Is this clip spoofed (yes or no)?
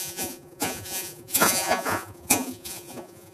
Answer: yes